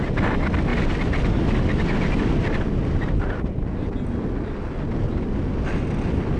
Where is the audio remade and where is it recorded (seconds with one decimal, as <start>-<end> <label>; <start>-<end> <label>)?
0.0-6.4 recorded